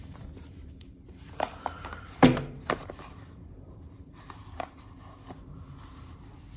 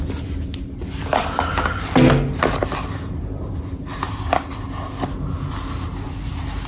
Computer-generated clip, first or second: first